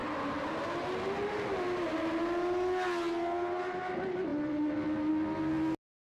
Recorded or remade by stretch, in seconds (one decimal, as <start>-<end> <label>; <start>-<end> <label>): 0.0-6.1 recorded